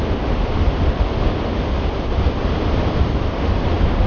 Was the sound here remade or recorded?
recorded